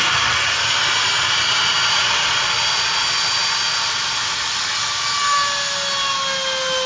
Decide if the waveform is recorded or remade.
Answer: recorded